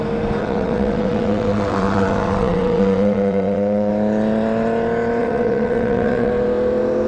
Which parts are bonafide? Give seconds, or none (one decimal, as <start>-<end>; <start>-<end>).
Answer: 0.0-0.4; 3.9-5.2; 6.3-7.1